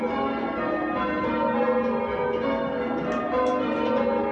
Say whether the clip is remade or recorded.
recorded